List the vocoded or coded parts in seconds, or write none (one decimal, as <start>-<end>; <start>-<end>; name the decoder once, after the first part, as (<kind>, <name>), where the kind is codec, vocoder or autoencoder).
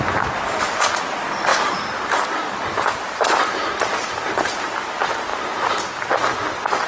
1.5-4.1 (vocoder, BigVGAN v2); 5.3-5.8